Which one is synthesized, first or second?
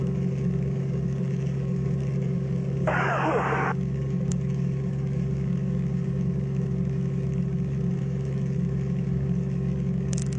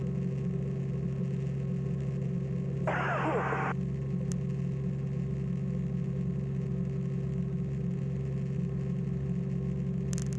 first